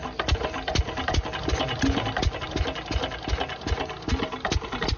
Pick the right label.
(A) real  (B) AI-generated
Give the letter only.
A